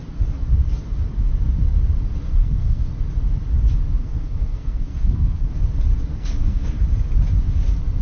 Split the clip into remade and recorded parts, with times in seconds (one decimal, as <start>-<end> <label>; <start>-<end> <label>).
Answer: 0.0-2.4 recorded; 2.4-2.9 remade; 2.9-4.0 recorded; 4.0-5.5 remade; 5.5-6.1 recorded; 6.1-6.8 remade; 6.8-8.0 recorded